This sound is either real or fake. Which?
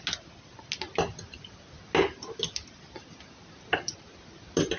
real